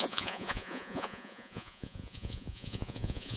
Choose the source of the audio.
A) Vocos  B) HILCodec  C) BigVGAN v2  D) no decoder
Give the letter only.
A